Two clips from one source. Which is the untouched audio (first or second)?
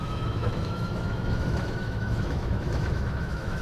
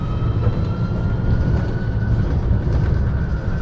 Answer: second